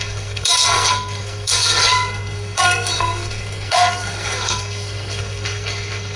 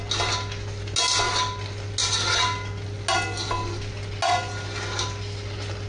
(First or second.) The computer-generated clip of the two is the first